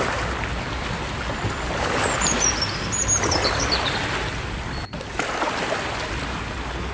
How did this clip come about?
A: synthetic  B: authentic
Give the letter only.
B